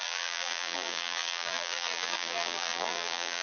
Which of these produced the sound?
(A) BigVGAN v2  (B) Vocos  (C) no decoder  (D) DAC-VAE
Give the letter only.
A